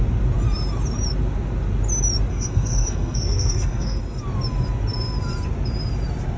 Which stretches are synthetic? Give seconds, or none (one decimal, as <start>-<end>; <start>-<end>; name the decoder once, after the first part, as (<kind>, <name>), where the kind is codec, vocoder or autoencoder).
2.3-4.0 (codec, SNAC)